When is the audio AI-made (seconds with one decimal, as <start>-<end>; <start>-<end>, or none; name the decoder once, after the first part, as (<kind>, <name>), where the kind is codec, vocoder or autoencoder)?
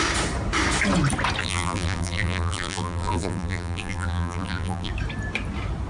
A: 1.4-4.9 (vocoder, BigVGAN v2)